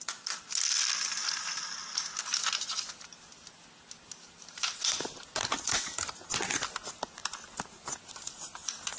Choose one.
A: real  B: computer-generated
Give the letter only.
A